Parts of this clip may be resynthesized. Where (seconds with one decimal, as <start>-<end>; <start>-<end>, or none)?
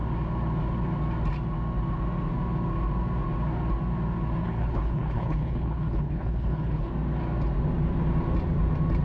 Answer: 4.4-6.9